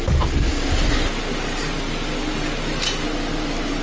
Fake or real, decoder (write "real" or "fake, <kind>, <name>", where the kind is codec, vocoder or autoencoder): real